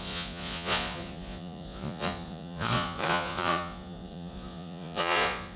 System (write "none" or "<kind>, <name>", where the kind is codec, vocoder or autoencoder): vocoder, Vocos